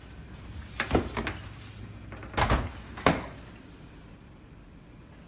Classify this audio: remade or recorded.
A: recorded